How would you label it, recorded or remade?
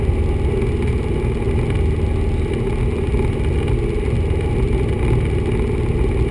recorded